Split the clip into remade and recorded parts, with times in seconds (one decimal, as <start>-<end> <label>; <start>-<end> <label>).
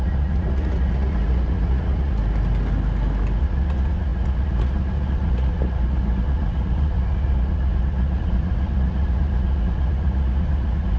0.0-2.2 remade; 2.2-3.4 recorded; 3.4-11.0 remade